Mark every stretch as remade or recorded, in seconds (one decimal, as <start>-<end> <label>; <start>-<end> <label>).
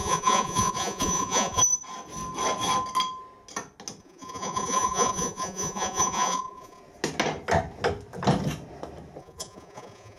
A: 0.0-1.6 remade; 1.6-4.0 recorded; 4.0-6.8 remade; 6.8-9.2 recorded; 9.2-10.2 remade